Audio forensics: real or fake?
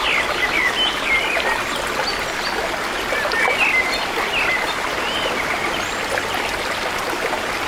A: real